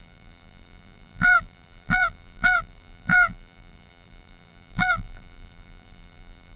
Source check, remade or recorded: remade